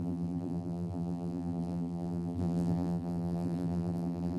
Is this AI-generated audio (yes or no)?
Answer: yes